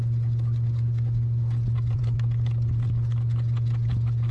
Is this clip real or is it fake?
real